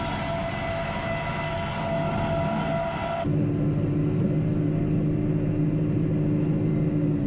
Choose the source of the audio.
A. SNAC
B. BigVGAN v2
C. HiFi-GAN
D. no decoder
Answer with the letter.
D